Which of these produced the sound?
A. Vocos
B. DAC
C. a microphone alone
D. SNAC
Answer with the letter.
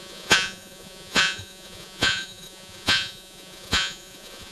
A